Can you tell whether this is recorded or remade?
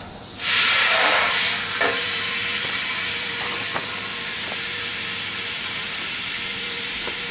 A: remade